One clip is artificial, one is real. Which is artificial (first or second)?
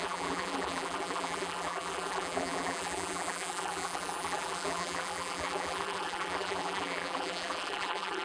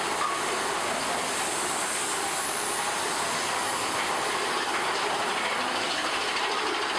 first